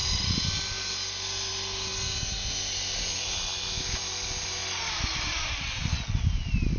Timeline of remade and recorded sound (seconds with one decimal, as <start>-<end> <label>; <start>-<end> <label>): 0.0-6.8 recorded